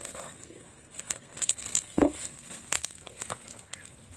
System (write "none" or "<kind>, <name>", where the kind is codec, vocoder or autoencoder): codec, SNAC